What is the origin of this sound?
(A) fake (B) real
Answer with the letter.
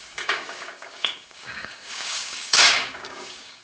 A